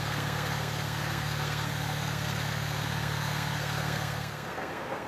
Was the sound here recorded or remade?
remade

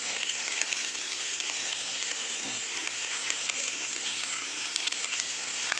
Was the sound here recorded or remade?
remade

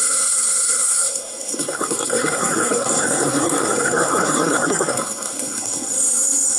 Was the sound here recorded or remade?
remade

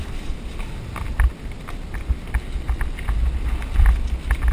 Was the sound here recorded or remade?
recorded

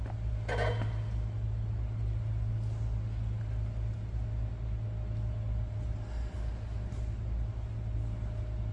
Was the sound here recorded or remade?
recorded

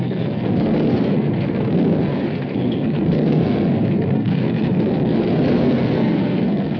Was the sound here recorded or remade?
remade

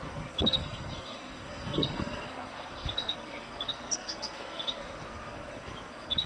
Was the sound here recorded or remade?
remade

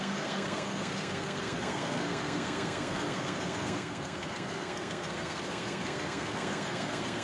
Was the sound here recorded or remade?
remade